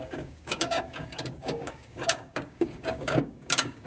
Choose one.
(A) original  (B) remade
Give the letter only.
B